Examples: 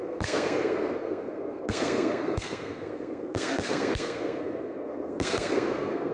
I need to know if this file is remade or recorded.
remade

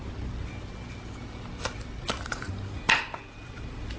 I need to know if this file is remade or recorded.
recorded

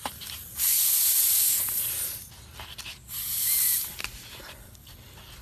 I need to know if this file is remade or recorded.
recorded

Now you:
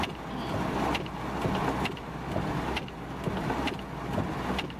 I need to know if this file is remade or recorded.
recorded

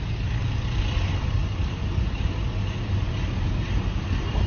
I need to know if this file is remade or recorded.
recorded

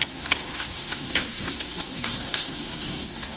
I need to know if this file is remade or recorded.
remade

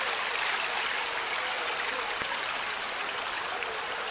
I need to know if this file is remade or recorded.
recorded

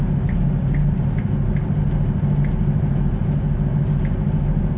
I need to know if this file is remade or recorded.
recorded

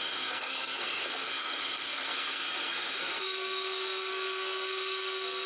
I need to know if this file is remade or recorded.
remade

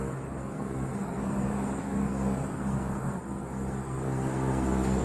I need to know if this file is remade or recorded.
remade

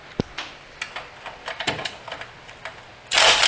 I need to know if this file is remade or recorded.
recorded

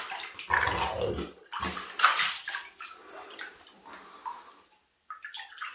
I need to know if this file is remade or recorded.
recorded